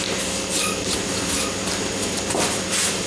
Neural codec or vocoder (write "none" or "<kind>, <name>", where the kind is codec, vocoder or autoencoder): none